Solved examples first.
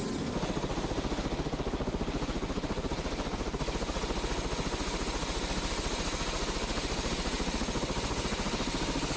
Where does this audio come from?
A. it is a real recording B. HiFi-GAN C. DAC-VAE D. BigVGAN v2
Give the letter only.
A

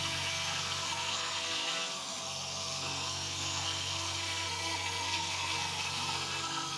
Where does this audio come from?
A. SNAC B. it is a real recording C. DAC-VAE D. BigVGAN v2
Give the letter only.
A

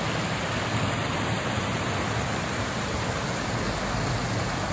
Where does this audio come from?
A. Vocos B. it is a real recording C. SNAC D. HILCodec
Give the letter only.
B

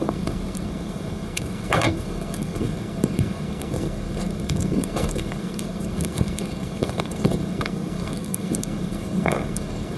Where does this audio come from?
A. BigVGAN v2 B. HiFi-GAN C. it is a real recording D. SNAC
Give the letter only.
D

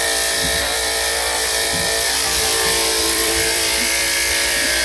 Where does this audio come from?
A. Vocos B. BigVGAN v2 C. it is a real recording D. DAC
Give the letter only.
B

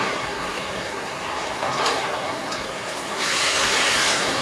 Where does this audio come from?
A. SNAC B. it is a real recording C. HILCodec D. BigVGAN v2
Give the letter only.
A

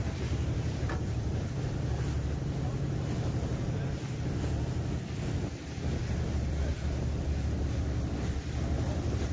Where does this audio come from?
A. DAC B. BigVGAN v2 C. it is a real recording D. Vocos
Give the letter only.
B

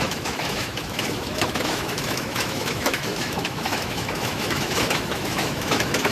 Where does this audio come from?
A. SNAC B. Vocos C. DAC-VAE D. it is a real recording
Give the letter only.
C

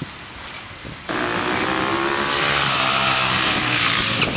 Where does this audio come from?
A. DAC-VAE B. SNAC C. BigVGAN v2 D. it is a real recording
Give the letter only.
C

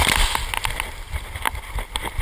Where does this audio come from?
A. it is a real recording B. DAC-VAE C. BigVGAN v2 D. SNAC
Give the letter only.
A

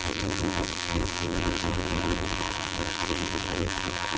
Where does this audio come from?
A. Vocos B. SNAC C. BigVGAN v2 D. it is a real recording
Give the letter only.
C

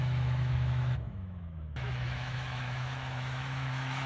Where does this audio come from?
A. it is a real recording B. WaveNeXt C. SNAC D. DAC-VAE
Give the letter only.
D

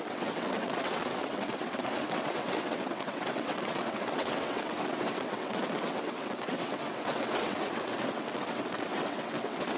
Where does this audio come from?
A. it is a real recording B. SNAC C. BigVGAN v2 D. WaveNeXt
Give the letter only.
D